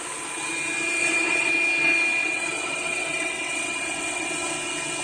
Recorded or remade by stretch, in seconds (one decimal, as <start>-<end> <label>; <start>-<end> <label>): 0.0-1.0 recorded; 1.0-1.5 remade; 1.5-2.2 recorded; 2.2-4.4 remade; 4.4-5.0 recorded